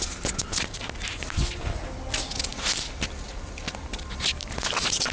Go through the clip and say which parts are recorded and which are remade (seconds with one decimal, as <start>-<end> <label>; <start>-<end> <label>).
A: 0.0-5.1 recorded